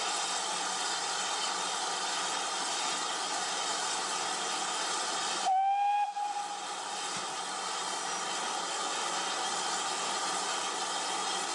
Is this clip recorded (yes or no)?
yes